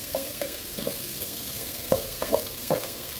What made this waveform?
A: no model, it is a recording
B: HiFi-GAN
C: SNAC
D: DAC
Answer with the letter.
C